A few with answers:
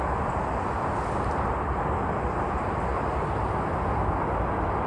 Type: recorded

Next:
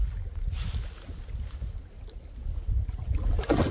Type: recorded